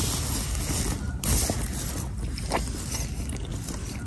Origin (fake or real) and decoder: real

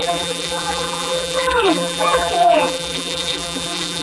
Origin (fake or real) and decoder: fake, vocoder, BigVGAN v2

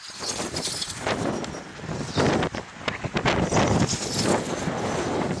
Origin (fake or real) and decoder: real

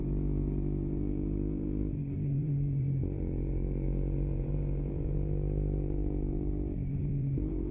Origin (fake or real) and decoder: fake, vocoder, BigVGAN v2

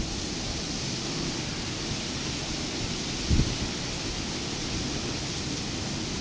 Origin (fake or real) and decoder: real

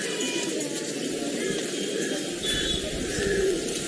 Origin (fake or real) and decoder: fake, vocoder, BigVGAN v2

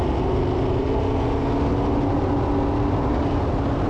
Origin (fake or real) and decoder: real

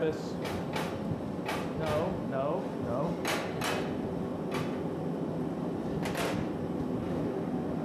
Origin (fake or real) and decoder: real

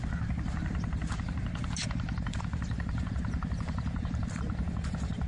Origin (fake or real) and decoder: fake, vocoder, BigVGAN v2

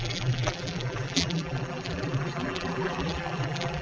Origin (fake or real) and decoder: fake, vocoder, BigVGAN v2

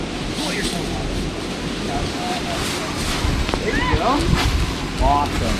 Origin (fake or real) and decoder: real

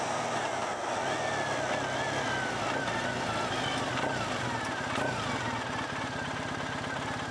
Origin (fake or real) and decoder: real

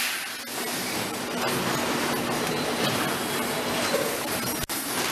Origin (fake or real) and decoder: real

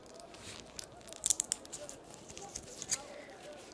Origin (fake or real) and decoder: real